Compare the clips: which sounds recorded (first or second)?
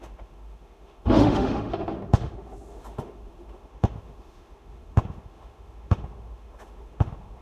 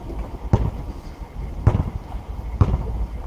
second